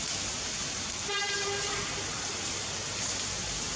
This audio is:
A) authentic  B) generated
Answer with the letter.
A